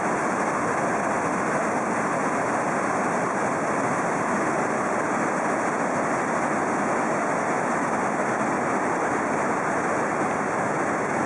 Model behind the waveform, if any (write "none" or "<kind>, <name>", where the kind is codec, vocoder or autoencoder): none